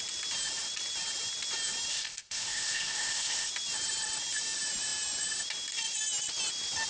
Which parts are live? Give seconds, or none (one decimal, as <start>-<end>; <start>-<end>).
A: 0.0-1.9; 3.5-6.9